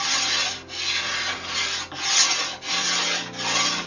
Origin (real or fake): real